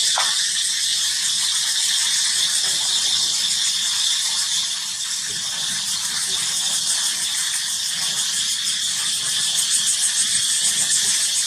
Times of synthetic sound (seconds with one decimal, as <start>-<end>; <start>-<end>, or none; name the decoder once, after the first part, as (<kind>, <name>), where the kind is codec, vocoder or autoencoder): none